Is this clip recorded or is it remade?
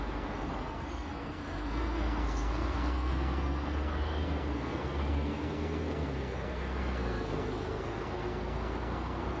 remade